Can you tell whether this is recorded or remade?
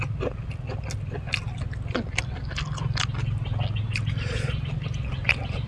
recorded